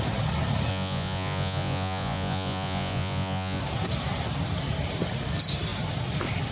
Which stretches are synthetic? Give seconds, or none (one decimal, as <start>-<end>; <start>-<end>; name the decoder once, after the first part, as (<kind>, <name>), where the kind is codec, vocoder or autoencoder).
0.7-3.6 (vocoder, Vocos)